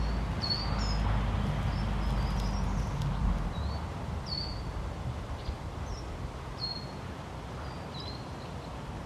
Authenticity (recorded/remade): recorded